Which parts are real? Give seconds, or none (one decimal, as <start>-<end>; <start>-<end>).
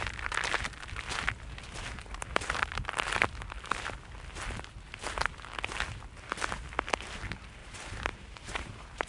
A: 0.0-7.6